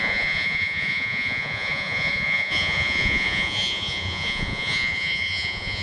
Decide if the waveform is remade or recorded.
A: remade